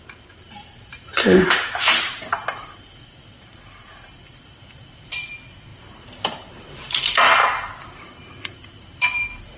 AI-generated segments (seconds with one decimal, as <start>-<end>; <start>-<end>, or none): 0.0-7.4; 8.0-9.6